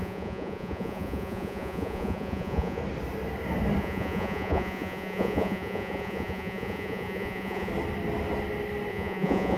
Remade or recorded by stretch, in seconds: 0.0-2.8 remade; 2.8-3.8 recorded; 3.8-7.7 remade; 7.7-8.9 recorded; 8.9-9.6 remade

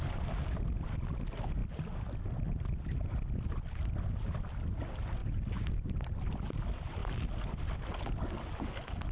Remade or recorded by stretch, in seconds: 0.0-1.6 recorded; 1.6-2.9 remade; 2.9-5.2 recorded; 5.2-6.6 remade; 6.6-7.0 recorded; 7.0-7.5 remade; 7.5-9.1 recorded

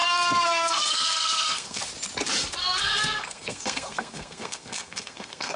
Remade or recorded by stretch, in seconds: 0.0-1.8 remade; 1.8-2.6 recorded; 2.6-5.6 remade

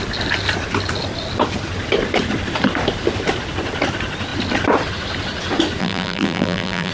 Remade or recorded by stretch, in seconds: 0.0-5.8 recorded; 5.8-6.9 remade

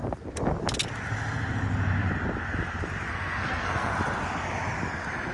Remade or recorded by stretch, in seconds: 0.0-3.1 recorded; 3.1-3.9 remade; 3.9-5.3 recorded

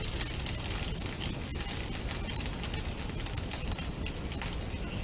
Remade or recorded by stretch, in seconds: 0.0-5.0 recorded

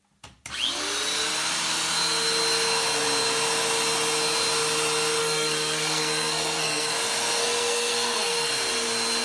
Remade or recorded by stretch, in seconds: 0.0-5.2 recorded; 5.2-6.9 remade; 6.9-7.4 recorded; 7.4-8.5 remade; 8.5-9.2 recorded